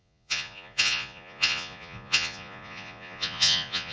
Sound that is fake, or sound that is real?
fake